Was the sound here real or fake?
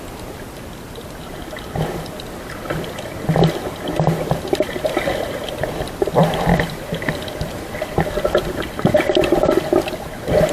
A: real